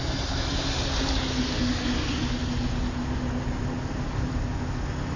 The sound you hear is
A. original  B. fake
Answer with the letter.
A